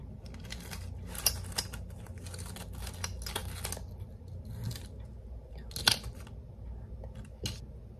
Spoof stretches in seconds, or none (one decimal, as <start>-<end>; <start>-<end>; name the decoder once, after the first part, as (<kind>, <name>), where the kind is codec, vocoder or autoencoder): none

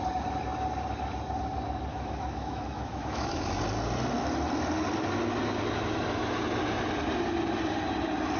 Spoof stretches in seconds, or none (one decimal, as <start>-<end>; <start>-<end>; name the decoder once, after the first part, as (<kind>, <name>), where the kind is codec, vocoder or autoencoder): 1.9-3.6 (autoencoder, DAC-VAE)